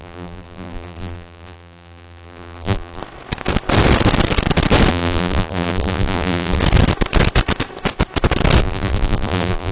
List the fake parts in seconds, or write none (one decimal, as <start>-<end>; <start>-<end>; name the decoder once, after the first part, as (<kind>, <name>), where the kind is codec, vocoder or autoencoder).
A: 0.0-3.0 (vocoder, BigVGAN v2); 4.9-6.6; 8.6-9.7

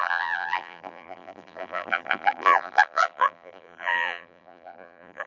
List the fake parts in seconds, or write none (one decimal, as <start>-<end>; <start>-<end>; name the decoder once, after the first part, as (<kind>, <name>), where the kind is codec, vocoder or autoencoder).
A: 0.0-5.3 (vocoder, BigVGAN v2)

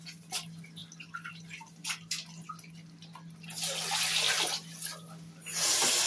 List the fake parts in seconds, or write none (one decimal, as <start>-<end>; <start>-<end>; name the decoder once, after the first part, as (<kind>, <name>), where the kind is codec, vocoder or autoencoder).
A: none

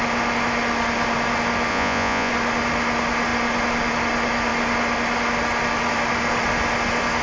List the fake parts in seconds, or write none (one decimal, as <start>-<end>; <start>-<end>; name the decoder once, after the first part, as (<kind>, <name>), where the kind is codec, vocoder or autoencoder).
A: 1.7-2.3 (vocoder, Vocos)

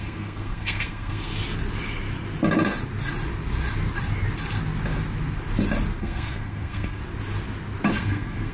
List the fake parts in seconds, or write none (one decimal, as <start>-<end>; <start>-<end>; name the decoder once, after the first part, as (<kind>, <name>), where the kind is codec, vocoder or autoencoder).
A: 0.0-1.3 (codec, SNAC); 6.0-7.0; 8.0-8.5